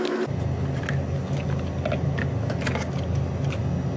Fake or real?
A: real